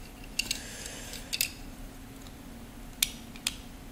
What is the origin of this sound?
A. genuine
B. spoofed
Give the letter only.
A